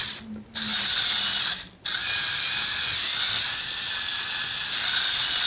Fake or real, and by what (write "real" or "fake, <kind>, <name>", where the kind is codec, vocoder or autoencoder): real